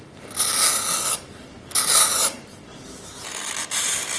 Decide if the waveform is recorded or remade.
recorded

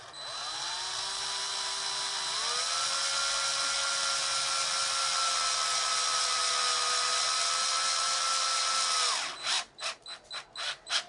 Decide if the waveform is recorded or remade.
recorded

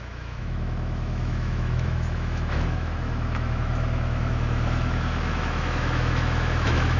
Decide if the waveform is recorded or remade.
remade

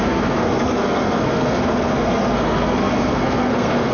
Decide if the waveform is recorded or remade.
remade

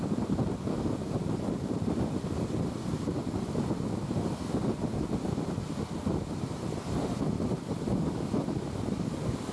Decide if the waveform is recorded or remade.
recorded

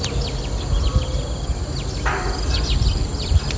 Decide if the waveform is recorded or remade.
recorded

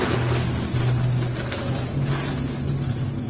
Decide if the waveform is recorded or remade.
recorded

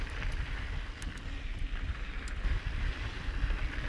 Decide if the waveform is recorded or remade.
remade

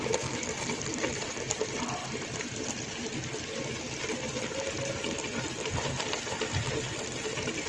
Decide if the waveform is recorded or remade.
remade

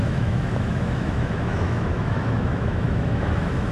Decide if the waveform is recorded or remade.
remade